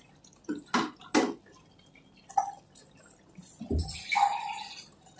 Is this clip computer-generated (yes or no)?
no